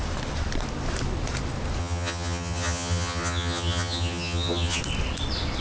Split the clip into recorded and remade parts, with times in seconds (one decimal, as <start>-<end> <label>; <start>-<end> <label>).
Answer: 0.0-1.8 recorded; 1.8-4.8 remade; 4.8-5.6 recorded